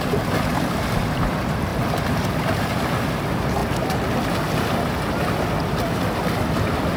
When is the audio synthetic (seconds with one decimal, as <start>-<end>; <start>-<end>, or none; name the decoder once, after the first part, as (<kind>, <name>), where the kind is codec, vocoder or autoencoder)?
0.0-1.7 (vocoder, BigVGAN v2); 2.2-3.6; 6.1-7.0